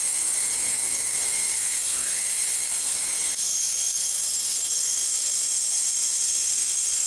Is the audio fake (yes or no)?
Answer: yes